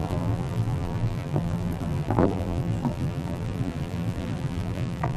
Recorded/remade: remade